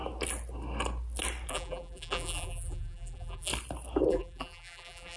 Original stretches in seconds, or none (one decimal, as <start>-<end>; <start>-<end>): 0.0-1.5; 3.5-4.1